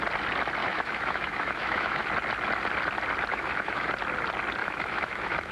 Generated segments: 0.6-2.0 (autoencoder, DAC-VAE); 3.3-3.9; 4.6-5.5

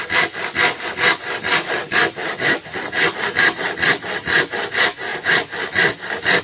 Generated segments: none

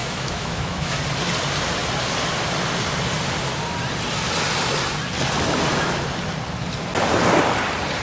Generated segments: 0.0-1.0 (autoencoder, DAC-VAE)

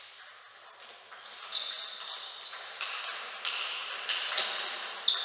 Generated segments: none

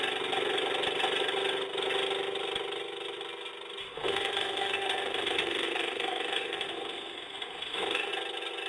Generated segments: 3.8-8.1 (autoencoder, DAC-VAE)

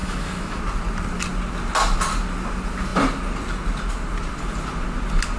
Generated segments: 0.0-0.6 (autoencoder, DAC-VAE)

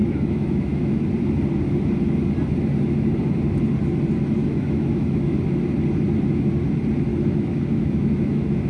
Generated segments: 0.0-1.0 (autoencoder, DAC-VAE); 4.4-5.4; 7.1-8.7

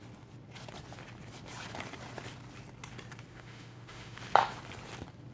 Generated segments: 3.3-4.2 (autoencoder, DAC-VAE)